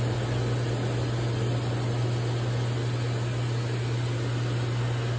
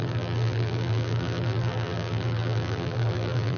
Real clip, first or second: first